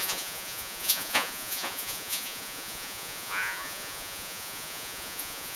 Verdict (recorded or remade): remade